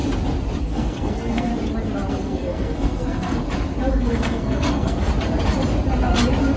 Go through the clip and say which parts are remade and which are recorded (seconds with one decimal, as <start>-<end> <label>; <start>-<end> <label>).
0.0-0.6 recorded; 0.6-1.5 remade; 1.5-2.1 recorded; 2.1-3.4 remade; 3.4-3.9 recorded; 3.9-5.1 remade; 5.1-6.6 recorded

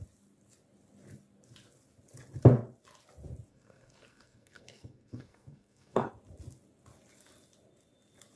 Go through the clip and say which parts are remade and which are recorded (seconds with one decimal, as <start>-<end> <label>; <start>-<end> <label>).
0.0-3.5 recorded; 3.5-6.1 remade; 6.1-8.4 recorded

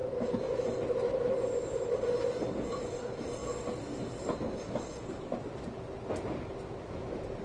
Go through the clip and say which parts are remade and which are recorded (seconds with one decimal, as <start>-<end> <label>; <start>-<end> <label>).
0.0-7.4 recorded

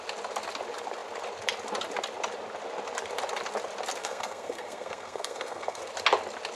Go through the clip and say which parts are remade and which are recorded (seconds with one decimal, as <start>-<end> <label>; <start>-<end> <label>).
0.0-4.0 recorded; 4.0-5.8 remade; 5.8-6.5 recorded

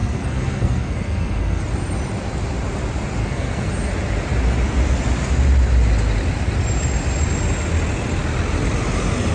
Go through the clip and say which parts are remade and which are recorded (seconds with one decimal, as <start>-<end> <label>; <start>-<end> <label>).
0.0-1.6 remade; 1.6-3.2 recorded; 3.2-3.7 remade; 3.7-9.3 recorded

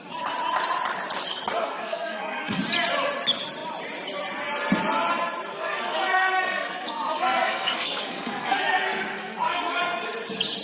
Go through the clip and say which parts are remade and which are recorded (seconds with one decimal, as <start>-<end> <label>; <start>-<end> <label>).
0.0-1.6 recorded; 1.6-2.6 remade; 2.6-5.5 recorded; 5.5-9.8 remade; 9.8-10.6 recorded